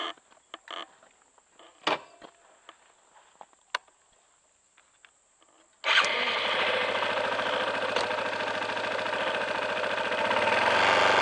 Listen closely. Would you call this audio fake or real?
real